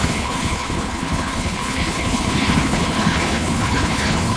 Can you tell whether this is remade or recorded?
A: remade